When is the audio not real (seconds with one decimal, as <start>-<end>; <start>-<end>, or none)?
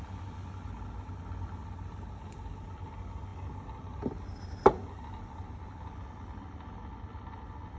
none